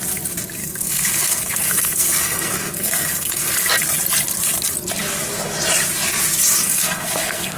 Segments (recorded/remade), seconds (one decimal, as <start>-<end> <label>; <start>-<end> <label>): 0.0-0.6 recorded; 0.6-3.5 remade; 3.5-6.6 recorded; 6.6-7.6 remade

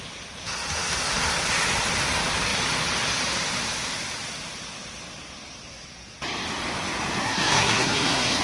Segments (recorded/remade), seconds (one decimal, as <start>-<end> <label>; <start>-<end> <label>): 0.0-7.2 recorded; 7.2-8.4 remade

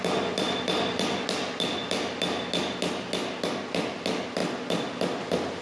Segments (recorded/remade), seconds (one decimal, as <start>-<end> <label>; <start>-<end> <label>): 0.0-5.6 recorded

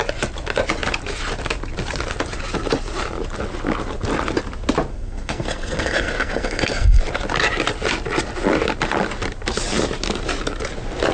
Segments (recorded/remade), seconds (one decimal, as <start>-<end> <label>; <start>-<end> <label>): 0.0-4.9 recorded; 4.9-7.0 remade; 7.0-11.1 recorded

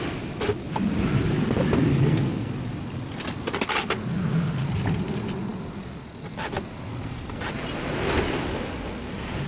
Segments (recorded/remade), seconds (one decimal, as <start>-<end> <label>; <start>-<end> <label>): 0.0-1.9 recorded; 1.9-2.5 remade; 2.5-6.9 recorded; 6.9-7.4 remade; 7.4-9.5 recorded